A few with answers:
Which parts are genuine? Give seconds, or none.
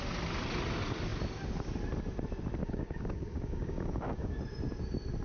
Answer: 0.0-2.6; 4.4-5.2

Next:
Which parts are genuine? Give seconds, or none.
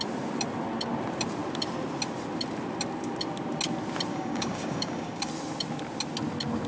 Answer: 0.0-4.1; 5.3-6.7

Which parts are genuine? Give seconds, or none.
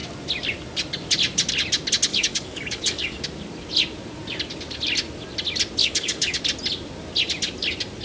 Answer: 0.0-2.1; 3.2-5.8; 6.4-8.0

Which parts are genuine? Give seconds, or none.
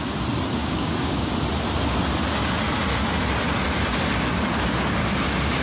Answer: 0.0-0.6; 1.3-5.6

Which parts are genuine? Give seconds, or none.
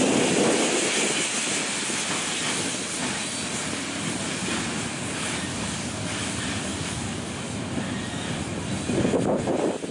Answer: 0.0-5.5; 6.2-6.7; 7.4-9.9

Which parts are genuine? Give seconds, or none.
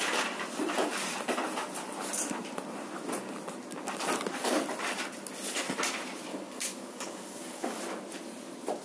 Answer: 0.0-6.3; 7.8-8.8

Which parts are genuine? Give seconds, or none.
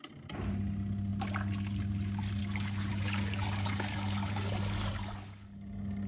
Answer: 0.0-2.4